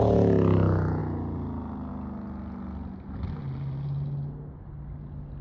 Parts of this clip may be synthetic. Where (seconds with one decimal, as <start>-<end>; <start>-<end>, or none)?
none

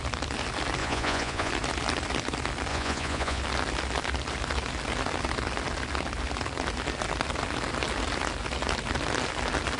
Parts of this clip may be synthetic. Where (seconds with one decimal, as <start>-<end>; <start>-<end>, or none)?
0.8-1.5; 2.7-3.4

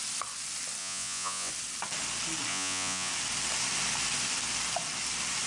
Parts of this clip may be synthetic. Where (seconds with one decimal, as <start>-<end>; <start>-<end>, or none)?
0.8-1.5; 2.5-3.1